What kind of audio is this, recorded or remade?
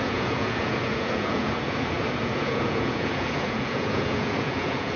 remade